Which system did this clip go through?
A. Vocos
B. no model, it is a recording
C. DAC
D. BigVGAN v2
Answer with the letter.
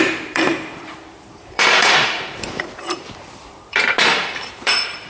D